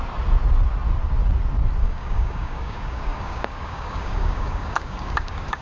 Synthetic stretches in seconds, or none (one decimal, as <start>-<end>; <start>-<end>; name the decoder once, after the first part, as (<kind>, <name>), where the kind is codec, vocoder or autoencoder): 1.8-5.6 (codec, DAC)